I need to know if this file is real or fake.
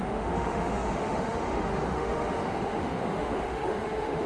fake